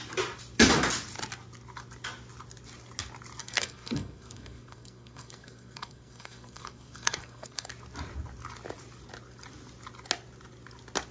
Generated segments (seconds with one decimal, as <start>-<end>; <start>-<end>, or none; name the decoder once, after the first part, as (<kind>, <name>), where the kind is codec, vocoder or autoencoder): 3.4-7.7 (codec, SNAC)